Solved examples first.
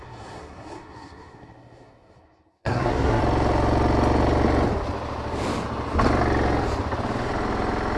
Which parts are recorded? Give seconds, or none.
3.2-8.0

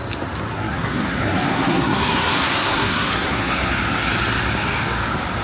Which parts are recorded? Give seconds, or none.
0.0-0.5; 3.7-5.4

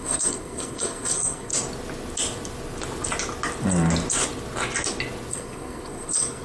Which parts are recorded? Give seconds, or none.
1.5-5.3

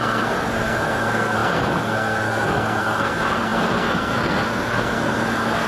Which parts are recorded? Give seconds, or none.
none

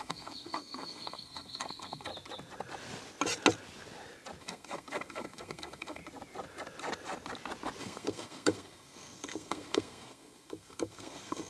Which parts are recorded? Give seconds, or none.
2.1-4.4; 6.0-7.8